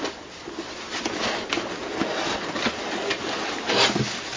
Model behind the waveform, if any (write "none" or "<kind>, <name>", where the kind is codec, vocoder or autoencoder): none